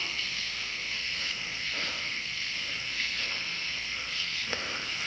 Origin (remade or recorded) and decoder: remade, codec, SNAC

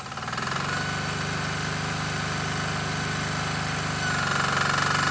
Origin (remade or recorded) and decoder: recorded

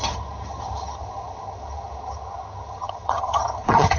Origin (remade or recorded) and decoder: remade, vocoder, HiFi-GAN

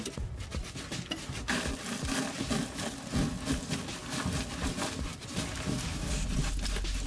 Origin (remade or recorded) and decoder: recorded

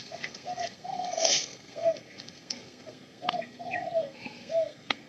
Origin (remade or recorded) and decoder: remade, codec, SNAC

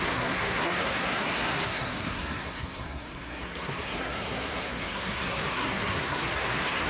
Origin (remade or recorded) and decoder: remade, codec, SNAC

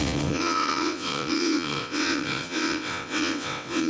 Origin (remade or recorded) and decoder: remade, vocoder, WaveNeXt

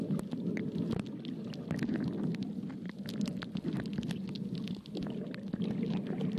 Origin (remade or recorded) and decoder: recorded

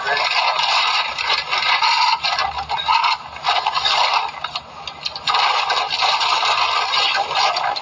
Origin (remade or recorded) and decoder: recorded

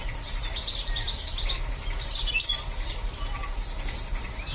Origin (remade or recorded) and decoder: recorded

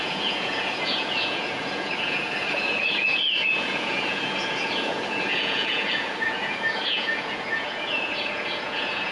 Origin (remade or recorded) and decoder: remade, vocoder, Vocos